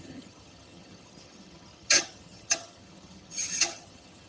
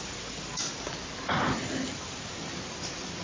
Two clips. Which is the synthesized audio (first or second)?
first